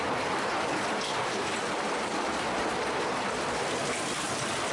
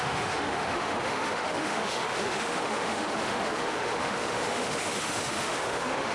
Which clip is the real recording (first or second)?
first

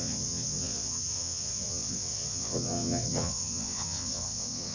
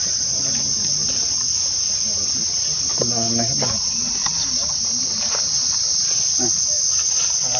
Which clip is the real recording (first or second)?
second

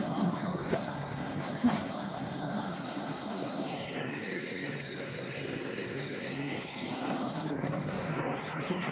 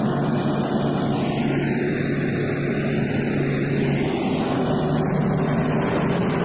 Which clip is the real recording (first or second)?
second